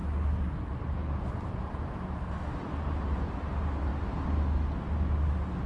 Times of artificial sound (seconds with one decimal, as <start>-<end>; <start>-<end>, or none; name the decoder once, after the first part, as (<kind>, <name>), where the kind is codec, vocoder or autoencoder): 1.2-3.9 (vocoder, BigVGAN v2)